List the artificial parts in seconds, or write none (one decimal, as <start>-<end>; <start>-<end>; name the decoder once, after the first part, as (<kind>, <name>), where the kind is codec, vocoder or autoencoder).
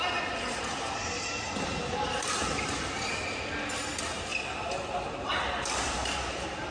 none